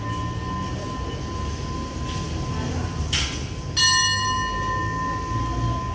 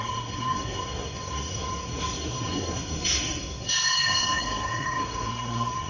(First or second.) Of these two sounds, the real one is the first